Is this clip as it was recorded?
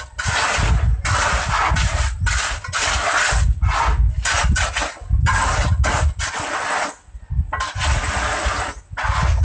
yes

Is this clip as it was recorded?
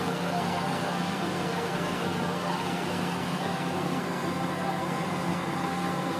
no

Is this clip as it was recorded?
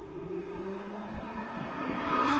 no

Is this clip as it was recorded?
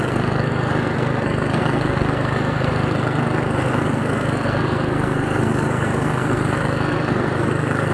no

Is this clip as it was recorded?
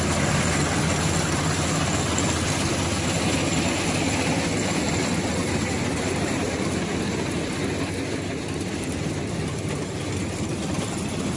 yes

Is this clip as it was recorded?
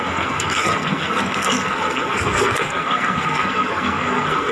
no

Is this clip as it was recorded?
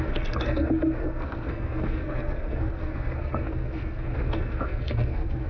no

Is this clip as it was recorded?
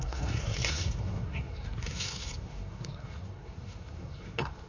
no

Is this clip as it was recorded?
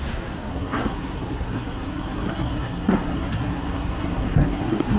no